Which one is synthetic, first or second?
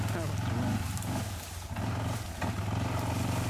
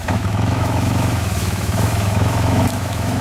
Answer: second